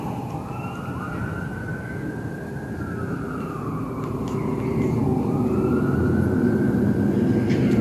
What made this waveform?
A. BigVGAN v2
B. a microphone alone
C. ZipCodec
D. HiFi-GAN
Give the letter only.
B